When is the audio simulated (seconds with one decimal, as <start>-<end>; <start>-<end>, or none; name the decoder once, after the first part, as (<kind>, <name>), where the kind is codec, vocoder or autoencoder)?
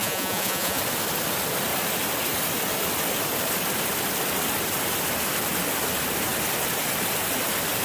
0.0-0.8 (vocoder, Vocos)